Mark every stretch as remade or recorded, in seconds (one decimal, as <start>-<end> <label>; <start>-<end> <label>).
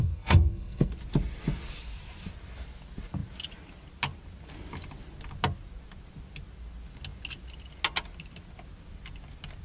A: 0.0-0.9 remade; 0.9-9.6 recorded